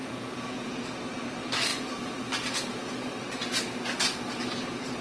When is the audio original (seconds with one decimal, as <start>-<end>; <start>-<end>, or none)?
0.8-5.0